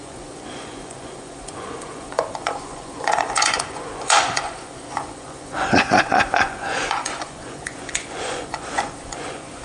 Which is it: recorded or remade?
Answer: remade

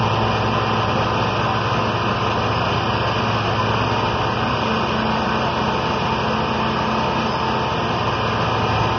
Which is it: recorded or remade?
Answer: recorded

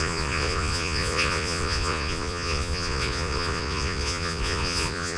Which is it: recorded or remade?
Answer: remade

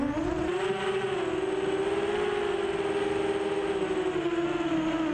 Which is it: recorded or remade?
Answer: recorded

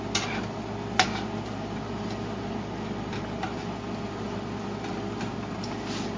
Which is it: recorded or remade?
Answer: recorded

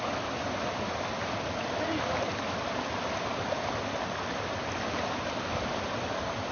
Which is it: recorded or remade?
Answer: recorded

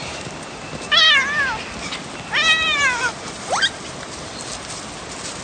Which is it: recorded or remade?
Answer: recorded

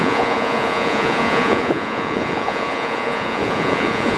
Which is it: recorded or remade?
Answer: remade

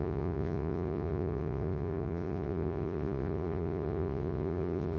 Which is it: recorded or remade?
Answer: remade